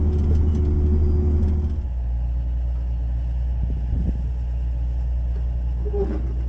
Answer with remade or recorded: recorded